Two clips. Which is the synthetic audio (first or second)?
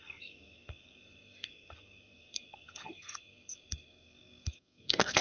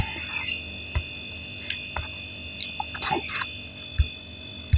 first